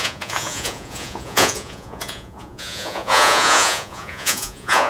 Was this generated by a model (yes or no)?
yes